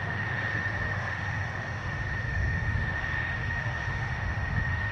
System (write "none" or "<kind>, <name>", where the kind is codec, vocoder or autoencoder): autoencoder, DAC-VAE